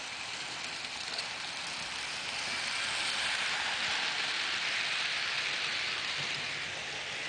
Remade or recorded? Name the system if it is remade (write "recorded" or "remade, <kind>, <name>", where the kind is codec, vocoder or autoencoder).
recorded